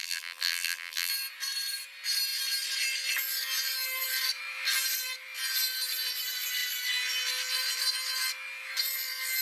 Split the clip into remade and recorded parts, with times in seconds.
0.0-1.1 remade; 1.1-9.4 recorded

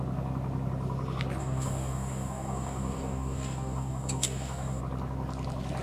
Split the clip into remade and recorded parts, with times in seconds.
0.0-1.4 recorded; 1.4-4.8 remade; 4.8-5.8 recorded

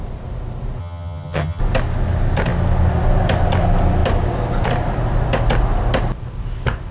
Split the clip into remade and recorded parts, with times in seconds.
0.0-0.8 recorded; 0.8-1.6 remade; 1.6-6.9 recorded

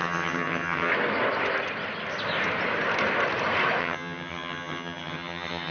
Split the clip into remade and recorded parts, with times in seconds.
0.0-0.9 remade; 0.9-3.8 recorded; 3.8-5.7 remade

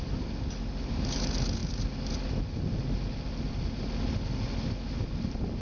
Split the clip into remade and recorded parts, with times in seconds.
0.0-5.6 recorded